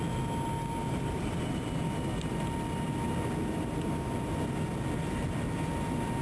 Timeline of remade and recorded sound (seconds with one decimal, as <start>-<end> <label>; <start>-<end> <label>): 0.0-0.8 recorded; 0.8-1.8 remade; 1.8-6.2 recorded